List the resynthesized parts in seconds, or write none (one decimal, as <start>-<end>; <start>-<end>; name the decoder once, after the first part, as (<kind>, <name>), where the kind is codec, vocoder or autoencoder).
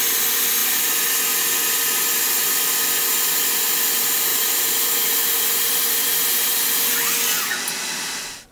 4.3-4.9 (vocoder, BigVGAN v2)